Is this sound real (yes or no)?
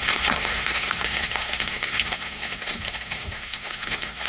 no